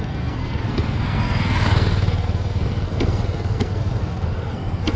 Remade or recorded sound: remade